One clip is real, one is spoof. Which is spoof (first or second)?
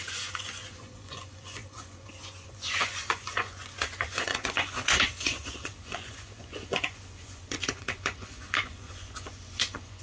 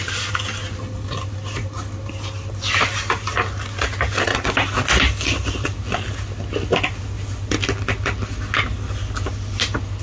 first